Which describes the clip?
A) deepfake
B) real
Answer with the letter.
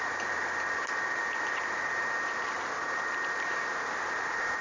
B